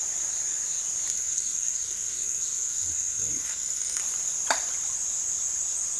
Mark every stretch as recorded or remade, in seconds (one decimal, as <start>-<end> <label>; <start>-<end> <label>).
0.0-1.1 recorded; 1.1-4.0 remade; 4.0-6.0 recorded